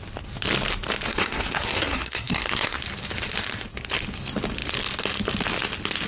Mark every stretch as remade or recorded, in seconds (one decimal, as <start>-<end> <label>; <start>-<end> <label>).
0.0-1.1 recorded; 1.1-2.8 remade; 2.8-6.1 recorded